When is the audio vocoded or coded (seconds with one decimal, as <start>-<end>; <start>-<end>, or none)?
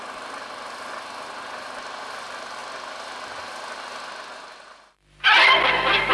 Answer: none